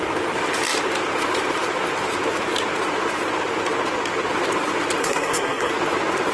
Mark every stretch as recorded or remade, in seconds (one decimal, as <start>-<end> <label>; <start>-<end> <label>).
0.0-5.0 recorded; 5.0-5.7 remade; 5.7-6.3 recorded